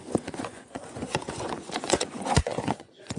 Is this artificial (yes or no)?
yes